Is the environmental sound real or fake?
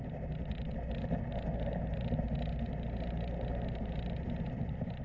real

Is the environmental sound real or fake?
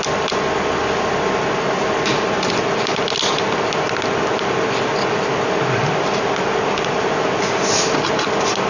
real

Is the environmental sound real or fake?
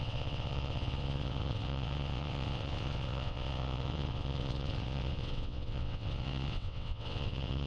fake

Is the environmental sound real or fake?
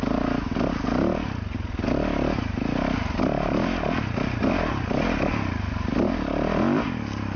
real